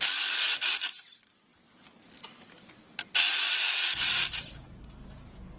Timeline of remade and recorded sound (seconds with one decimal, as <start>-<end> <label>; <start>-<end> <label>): 0.0-5.6 recorded